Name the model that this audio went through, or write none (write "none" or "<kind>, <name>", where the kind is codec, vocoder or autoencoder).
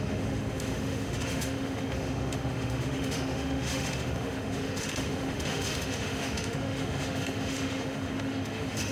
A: autoencoder, DAC-VAE